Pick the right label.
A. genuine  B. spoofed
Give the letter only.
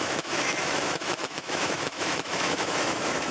B